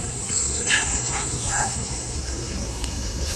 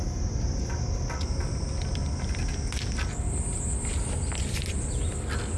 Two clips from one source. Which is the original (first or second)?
second